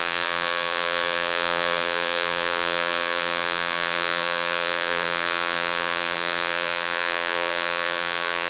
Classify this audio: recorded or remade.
remade